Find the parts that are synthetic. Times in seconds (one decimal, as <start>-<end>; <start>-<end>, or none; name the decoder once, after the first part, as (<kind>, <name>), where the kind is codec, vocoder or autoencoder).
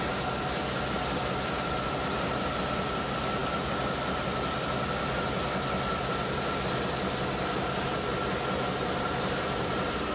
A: none